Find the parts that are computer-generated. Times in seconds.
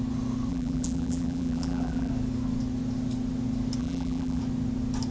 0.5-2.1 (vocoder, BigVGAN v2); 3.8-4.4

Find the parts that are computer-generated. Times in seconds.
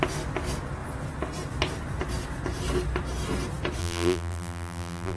3.8-5.2 (vocoder, BigVGAN v2)